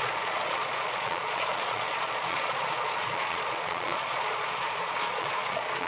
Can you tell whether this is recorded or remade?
remade